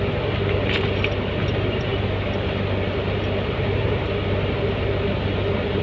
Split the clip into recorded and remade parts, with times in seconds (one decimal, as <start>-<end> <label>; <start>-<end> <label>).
0.0-5.8 recorded